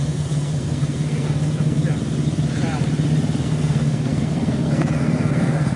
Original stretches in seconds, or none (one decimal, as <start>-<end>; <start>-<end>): 1.8-3.4